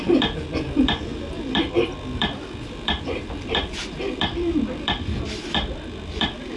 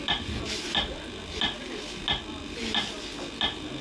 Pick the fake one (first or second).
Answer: first